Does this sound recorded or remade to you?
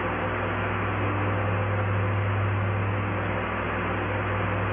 recorded